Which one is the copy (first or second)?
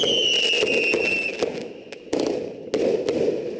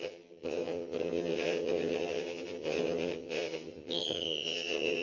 second